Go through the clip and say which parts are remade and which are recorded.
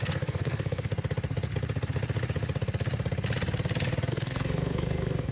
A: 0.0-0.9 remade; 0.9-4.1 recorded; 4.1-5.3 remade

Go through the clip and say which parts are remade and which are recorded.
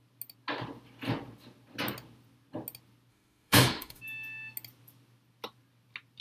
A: 0.0-3.1 recorded; 3.1-4.0 remade; 4.0-6.2 recorded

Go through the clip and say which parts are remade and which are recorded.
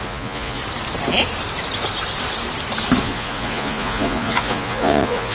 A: 0.0-0.6 remade; 0.6-3.0 recorded; 3.0-5.3 remade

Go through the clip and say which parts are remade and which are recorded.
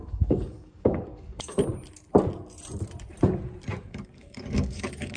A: 0.0-1.6 remade; 1.6-3.8 recorded; 3.8-5.2 remade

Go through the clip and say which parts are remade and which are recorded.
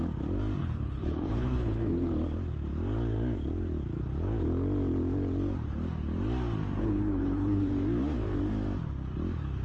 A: 0.0-0.6 recorded; 0.6-2.1 remade; 2.1-6.8 recorded; 6.8-7.7 remade; 7.7-9.6 recorded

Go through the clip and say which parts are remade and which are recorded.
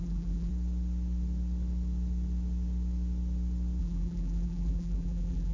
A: 0.0-0.5 remade; 0.5-3.8 recorded; 3.8-5.5 remade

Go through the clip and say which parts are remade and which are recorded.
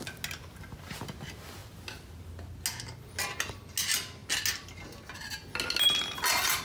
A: 0.0-6.6 recorded